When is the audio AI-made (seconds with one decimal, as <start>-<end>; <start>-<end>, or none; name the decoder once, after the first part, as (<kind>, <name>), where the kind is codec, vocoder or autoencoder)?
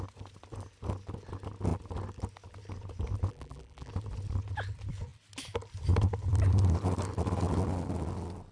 3.3-3.9 (vocoder, BigVGAN v2)